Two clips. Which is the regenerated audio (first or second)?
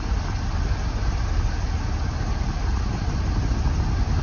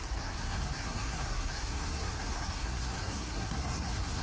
second